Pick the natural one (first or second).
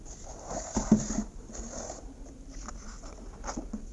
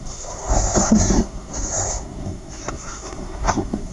first